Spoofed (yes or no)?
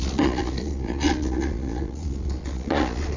yes